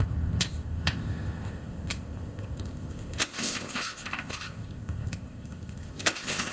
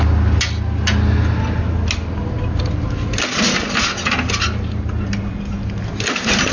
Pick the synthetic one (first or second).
first